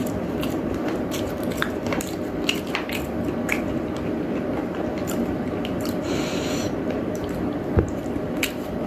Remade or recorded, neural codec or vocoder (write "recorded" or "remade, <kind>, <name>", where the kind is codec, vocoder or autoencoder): remade, vocoder, BigVGAN v2